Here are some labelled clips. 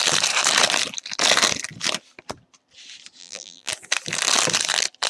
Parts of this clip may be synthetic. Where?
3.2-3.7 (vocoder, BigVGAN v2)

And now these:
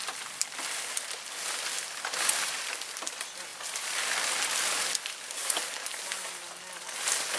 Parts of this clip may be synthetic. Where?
none

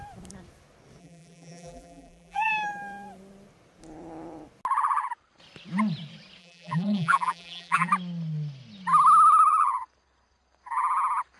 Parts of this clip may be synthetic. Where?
1.0-2.5 (vocoder, BigVGAN v2); 6.4-7.9